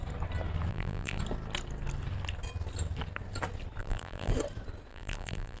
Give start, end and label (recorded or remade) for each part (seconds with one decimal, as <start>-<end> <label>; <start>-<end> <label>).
0.0-0.7 recorded; 0.7-1.2 remade; 1.2-3.8 recorded; 3.8-4.3 remade; 4.3-4.9 recorded; 4.9-5.6 remade